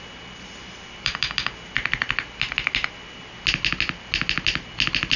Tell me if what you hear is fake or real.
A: real